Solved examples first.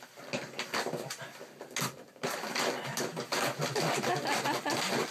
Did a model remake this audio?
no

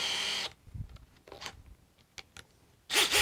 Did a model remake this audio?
no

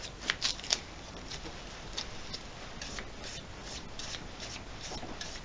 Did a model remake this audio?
no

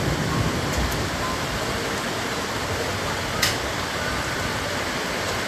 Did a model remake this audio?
no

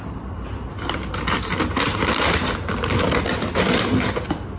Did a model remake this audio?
no